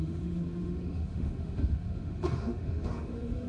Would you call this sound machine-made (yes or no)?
yes